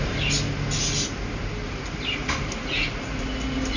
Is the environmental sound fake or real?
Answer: real